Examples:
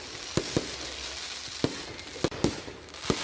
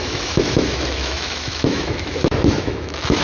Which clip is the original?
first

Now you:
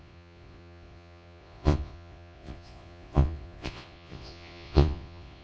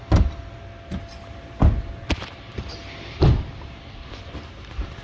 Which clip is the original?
second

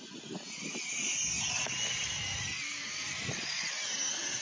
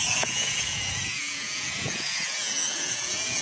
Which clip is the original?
first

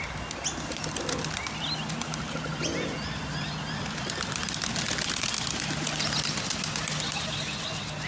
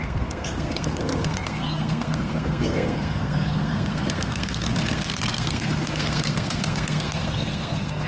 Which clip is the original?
first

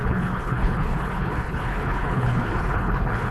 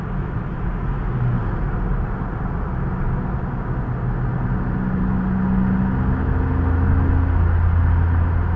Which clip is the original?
second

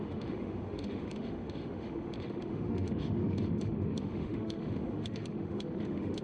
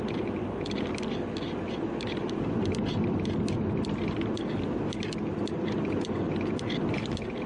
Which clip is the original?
second